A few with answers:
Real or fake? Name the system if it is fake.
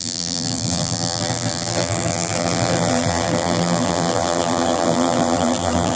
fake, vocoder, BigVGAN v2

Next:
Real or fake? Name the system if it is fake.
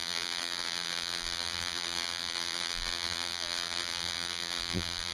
fake, vocoder, BigVGAN v2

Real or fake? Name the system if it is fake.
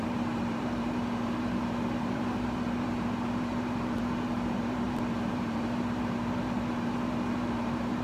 fake, vocoder, BigVGAN v2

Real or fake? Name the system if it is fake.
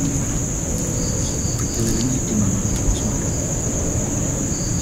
real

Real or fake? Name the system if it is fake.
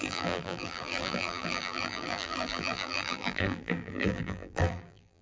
fake, vocoder, BigVGAN v2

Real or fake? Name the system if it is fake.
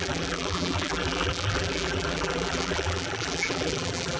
fake, vocoder, BigVGAN v2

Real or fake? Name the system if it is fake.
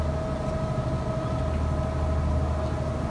real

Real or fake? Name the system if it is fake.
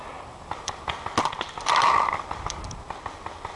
real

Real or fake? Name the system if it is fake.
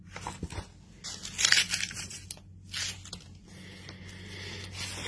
real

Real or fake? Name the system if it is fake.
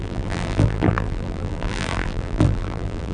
fake, vocoder, BigVGAN v2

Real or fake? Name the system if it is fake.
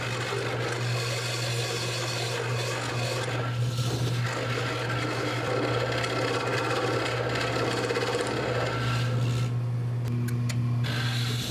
real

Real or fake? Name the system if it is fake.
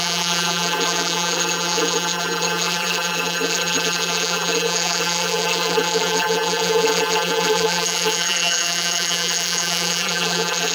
fake, vocoder, BigVGAN v2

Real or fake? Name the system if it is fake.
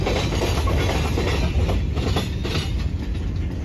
real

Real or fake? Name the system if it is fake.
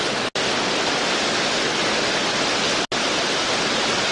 real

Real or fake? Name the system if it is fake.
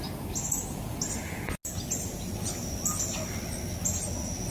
real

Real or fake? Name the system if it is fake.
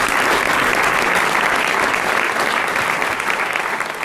real